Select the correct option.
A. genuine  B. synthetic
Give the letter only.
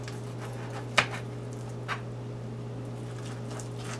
A